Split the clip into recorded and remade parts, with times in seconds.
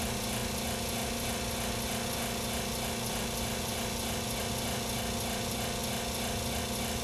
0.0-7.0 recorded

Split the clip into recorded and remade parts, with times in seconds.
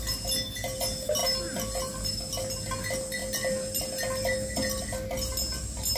0.0-6.0 recorded